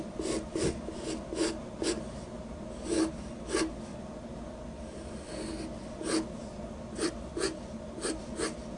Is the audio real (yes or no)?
yes